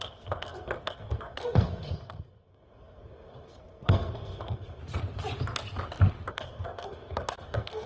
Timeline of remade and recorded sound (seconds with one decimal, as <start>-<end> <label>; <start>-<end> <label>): 0.0-4.8 remade; 4.8-6.3 recorded; 6.3-7.9 remade